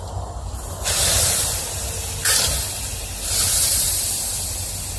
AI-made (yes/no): no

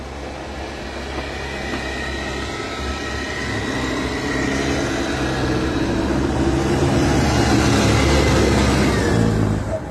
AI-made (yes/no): no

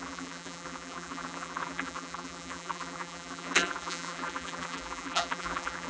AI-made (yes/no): yes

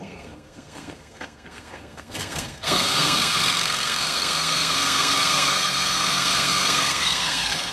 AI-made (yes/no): yes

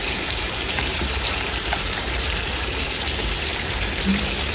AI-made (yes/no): yes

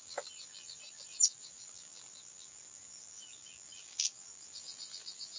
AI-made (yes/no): yes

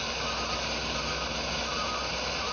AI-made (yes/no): no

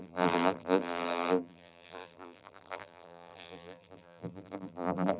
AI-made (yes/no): yes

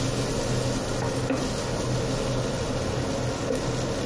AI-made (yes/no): no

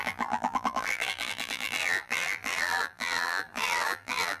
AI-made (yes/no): yes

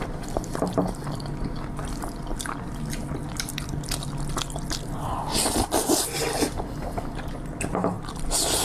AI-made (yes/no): no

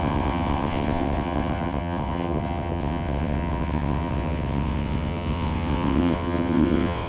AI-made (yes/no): yes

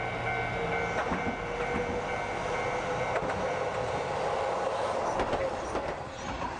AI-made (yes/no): no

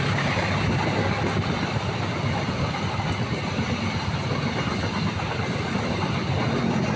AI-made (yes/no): no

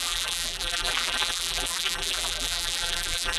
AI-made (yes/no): yes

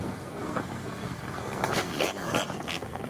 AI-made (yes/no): yes